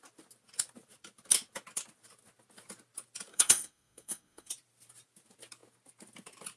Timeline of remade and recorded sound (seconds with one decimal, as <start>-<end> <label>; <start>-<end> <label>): 0.0-3.3 recorded; 3.3-4.5 remade; 4.5-6.6 recorded

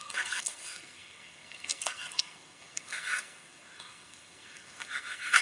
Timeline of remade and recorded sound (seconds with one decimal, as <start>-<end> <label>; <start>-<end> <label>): 0.0-5.4 remade

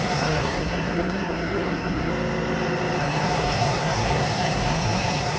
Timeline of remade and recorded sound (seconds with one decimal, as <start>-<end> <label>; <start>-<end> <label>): 0.0-2.1 remade; 2.1-3.0 recorded; 3.0-5.4 remade

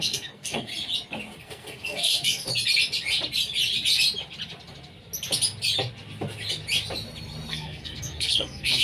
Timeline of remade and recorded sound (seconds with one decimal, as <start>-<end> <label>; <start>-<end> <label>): 0.0-0.7 remade; 0.7-1.4 recorded; 1.4-2.5 remade; 2.5-7.5 recorded; 7.5-8.8 remade

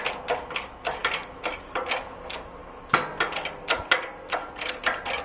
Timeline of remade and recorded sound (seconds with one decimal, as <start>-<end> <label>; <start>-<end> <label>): 0.0-5.2 recorded

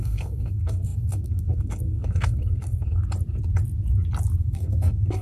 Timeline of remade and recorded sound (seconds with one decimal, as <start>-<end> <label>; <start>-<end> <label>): 0.0-3.0 remade; 3.0-4.4 recorded; 4.4-5.2 remade

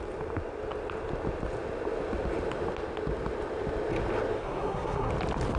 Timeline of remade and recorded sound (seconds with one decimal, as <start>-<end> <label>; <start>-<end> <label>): 0.0-4.4 recorded; 4.4-5.1 remade; 5.1-5.6 recorded